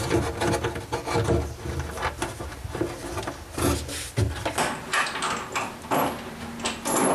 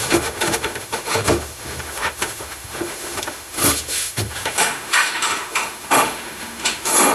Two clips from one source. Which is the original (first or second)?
first